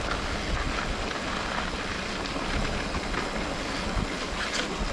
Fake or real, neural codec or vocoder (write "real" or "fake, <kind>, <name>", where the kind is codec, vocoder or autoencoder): real